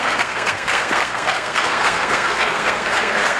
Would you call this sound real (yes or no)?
no